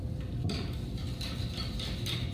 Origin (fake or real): real